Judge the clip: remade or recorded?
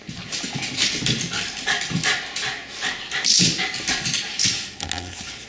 recorded